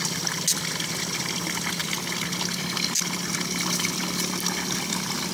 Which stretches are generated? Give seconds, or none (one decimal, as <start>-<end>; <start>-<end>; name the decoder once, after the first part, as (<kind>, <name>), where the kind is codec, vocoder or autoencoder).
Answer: none